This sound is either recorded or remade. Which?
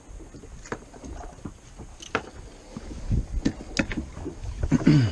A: recorded